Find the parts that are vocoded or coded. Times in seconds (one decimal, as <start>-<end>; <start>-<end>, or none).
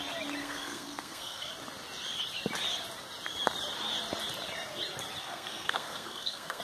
0.4-1.5; 5.2-6.6